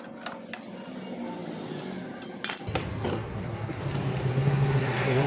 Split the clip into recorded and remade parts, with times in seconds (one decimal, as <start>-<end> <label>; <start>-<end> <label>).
0.0-3.1 recorded; 3.1-3.8 remade; 3.8-4.3 recorded; 4.3-5.3 remade